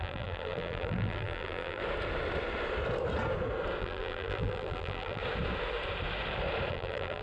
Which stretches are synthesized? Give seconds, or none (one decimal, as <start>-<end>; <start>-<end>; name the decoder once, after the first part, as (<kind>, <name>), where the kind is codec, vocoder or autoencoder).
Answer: 0.0-1.8 (vocoder, BigVGAN v2); 3.8-5.2; 6.7-7.2